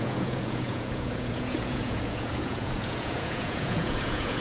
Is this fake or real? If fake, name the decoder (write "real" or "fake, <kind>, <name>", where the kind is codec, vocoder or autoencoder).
fake, vocoder, Vocos